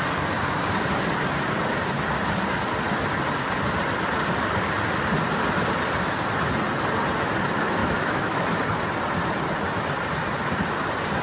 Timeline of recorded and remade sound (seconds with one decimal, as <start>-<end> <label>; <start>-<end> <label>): 0.0-7.8 recorded; 7.8-8.4 remade; 8.4-11.2 recorded